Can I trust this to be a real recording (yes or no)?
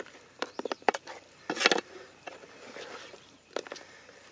yes